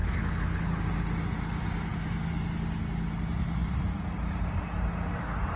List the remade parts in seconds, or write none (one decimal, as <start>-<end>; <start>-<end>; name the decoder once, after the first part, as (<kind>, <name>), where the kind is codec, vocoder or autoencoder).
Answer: 0.0-0.8 (codec, HILCodec)